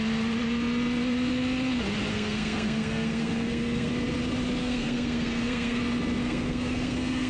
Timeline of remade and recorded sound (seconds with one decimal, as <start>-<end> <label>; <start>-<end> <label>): 0.0-2.1 recorded; 2.1-3.9 remade; 3.9-4.6 recorded; 4.6-5.8 remade; 5.8-6.2 recorded; 6.2-7.3 remade